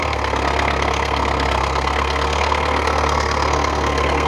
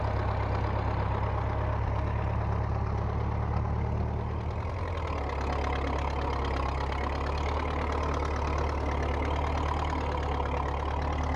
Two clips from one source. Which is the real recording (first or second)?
second